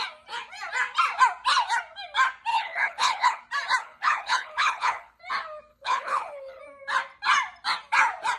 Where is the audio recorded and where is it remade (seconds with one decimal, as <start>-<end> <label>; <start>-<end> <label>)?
0.0-2.5 recorded; 2.5-3.4 remade; 3.4-3.8 recorded; 3.8-5.2 remade; 5.2-5.7 recorded; 5.7-6.6 remade; 6.6-8.4 recorded